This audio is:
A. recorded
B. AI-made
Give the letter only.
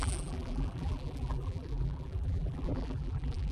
B